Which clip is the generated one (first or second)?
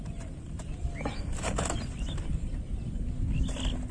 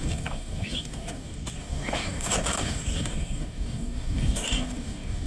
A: second